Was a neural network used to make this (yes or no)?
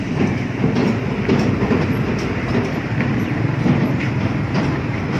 no